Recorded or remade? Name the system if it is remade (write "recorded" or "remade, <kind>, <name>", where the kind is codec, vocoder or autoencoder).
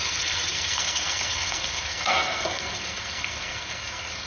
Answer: remade, codec, SNAC